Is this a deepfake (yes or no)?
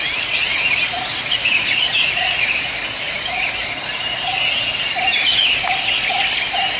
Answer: no